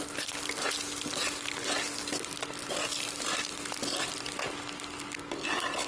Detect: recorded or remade recorded